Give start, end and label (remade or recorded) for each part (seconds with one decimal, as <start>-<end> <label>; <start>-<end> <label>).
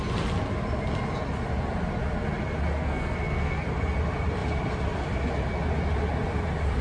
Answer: 0.0-2.8 recorded; 2.8-3.6 remade; 3.6-6.8 recorded